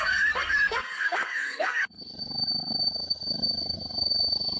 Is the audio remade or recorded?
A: remade